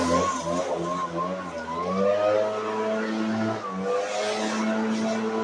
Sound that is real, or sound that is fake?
real